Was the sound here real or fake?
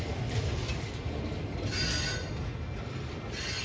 real